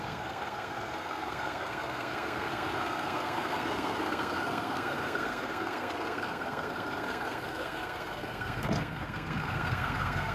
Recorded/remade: remade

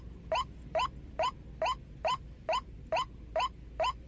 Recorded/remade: recorded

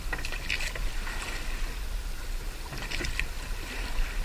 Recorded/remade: recorded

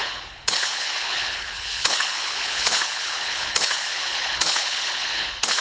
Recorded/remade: remade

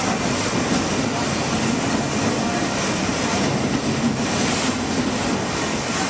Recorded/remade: recorded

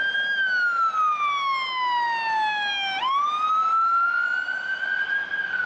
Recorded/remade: recorded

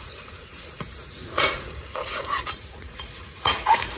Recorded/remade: remade